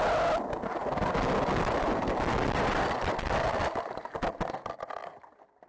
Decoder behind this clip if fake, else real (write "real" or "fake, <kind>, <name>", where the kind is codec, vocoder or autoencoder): real